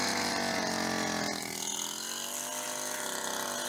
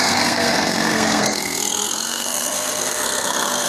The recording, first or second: first